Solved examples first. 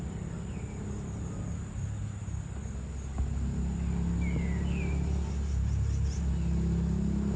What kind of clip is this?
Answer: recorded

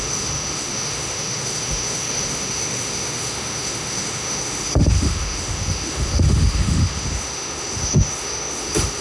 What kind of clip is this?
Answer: remade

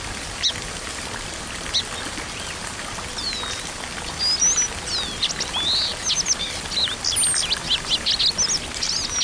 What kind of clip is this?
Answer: recorded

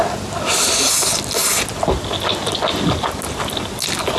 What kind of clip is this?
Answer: recorded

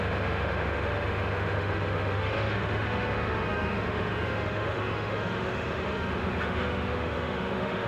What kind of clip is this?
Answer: remade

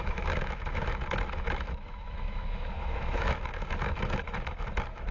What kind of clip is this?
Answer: remade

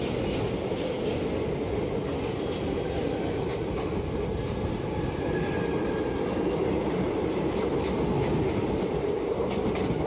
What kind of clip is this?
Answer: recorded